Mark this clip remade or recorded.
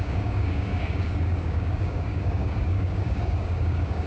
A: remade